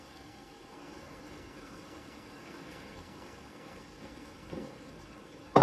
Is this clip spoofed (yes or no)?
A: yes